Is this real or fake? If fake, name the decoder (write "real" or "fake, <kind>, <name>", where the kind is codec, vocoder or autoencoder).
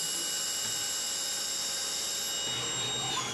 real